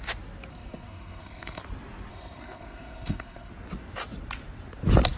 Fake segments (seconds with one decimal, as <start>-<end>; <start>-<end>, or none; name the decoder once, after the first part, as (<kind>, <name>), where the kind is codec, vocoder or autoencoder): 0.5-1.6 (codec, SNAC); 2.1-3.5